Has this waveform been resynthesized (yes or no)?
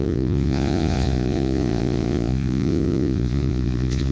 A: yes